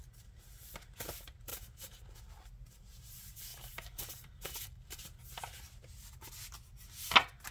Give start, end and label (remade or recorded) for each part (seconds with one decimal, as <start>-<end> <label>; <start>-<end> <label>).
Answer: 0.0-1.5 recorded; 1.5-2.2 remade; 2.2-3.5 recorded; 3.5-5.2 remade; 5.2-7.5 recorded